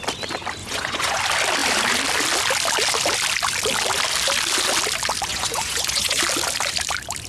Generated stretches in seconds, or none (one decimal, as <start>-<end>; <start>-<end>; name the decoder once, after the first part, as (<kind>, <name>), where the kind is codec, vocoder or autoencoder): 0.6-1.2 (vocoder, Vocos); 5.3-6.2